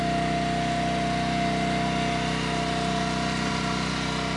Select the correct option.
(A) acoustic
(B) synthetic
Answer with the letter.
A